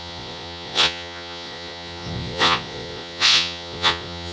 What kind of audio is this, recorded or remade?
remade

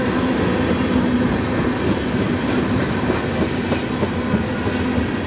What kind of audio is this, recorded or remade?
recorded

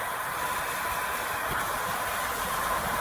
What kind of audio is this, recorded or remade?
recorded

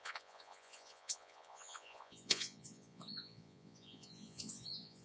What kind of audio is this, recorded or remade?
remade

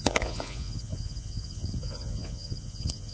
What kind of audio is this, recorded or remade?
remade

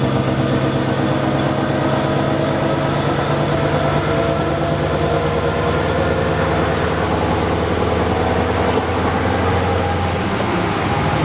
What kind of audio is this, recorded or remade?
recorded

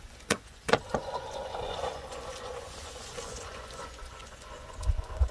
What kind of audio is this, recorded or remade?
remade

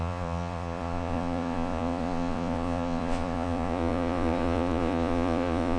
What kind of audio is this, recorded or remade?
remade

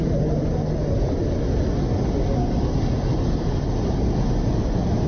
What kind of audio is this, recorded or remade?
recorded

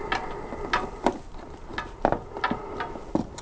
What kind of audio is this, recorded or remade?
recorded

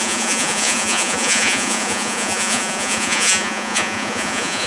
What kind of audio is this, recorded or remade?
remade